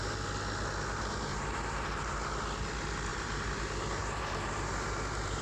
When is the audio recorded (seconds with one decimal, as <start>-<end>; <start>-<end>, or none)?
0.0-1.3; 1.9-3.1; 3.6-4.0; 4.7-5.4